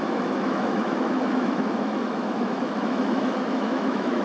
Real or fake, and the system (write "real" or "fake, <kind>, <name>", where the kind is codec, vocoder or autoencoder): fake, autoencoder, DAC-VAE